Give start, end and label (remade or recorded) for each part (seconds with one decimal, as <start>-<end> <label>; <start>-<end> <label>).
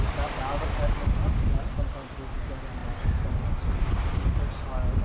0.0-5.0 recorded